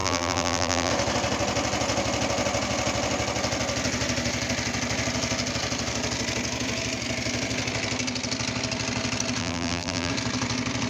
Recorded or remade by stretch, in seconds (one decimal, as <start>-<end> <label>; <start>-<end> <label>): 0.0-0.9 remade; 0.9-9.4 recorded; 9.4-10.1 remade; 10.1-10.9 recorded